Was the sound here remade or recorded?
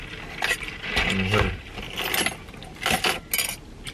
recorded